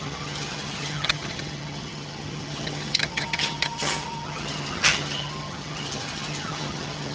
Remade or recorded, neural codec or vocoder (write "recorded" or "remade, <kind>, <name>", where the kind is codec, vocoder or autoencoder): remade, vocoder, HiFi-GAN